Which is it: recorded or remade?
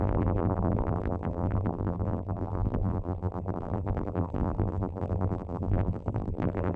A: remade